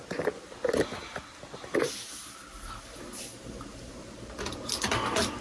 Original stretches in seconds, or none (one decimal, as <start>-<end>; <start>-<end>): 0.0-3.3; 4.1-5.4